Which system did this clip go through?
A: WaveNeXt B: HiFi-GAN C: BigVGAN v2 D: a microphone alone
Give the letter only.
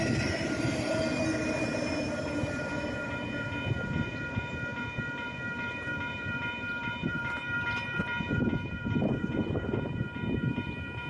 C